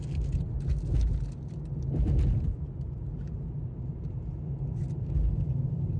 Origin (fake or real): real